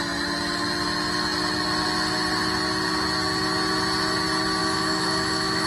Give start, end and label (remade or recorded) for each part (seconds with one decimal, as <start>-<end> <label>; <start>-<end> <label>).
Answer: 0.0-4.6 recorded; 4.6-5.7 remade